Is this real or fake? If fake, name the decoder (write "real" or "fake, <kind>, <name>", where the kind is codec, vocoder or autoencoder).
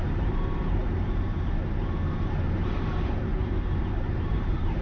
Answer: fake, vocoder, BigVGAN v2